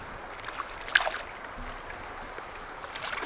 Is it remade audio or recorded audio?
recorded